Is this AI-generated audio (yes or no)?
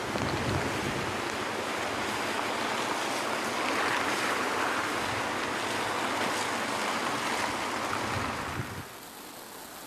no